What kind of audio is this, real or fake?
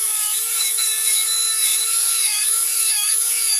fake